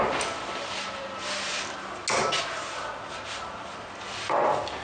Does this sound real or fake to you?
real